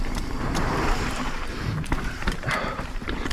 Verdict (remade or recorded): remade